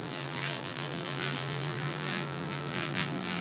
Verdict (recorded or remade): remade